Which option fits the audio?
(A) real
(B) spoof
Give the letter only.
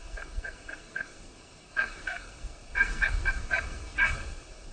B